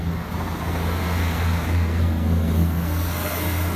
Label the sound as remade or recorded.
remade